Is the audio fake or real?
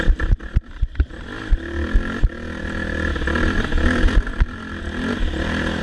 real